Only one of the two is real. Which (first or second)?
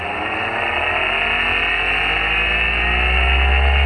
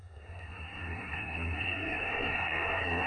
first